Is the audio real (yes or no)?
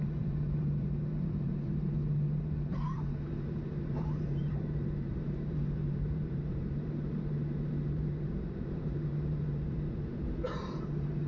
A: no